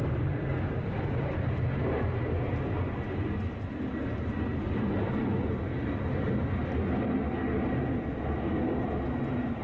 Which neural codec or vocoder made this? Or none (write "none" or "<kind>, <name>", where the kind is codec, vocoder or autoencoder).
none